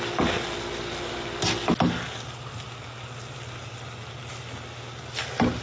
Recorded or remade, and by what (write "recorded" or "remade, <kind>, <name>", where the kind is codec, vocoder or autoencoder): recorded